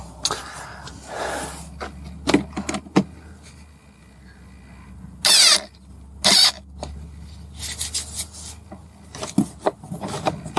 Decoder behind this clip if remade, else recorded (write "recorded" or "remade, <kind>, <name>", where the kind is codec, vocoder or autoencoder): recorded